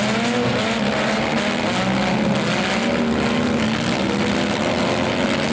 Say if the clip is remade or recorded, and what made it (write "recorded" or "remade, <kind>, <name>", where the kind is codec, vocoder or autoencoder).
recorded